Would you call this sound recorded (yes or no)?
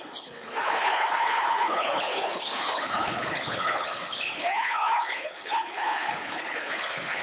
no